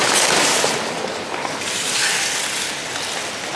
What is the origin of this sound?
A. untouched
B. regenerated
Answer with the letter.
A